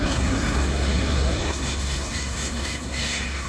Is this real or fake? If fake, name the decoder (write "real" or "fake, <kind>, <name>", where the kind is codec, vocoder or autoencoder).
fake, codec, SNAC